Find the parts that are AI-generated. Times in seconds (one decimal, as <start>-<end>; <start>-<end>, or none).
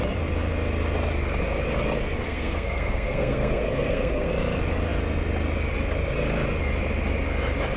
2.3-4.3